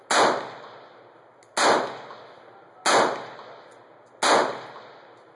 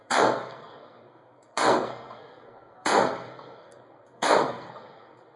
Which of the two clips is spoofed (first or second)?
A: second